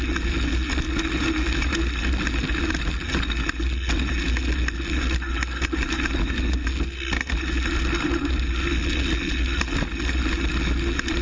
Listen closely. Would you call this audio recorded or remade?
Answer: recorded